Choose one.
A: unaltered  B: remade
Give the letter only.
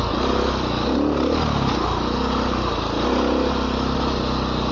A